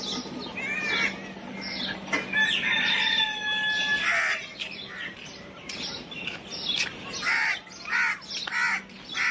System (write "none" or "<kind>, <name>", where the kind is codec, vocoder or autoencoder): none